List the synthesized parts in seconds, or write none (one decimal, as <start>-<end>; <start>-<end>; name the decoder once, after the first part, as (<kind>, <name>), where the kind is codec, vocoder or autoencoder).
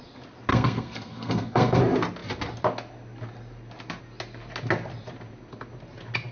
0.5-1.8 (codec, SNAC)